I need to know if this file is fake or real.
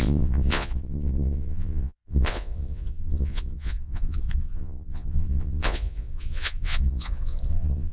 fake